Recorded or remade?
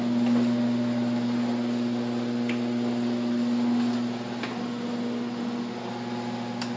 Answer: recorded